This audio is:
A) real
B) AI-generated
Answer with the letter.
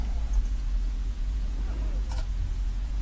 B